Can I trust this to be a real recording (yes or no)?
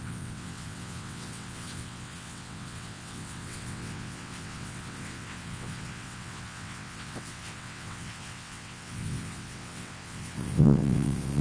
no